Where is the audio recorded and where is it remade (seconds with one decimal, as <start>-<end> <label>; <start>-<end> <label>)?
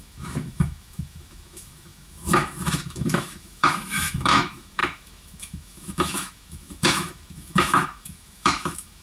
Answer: 0.0-9.0 remade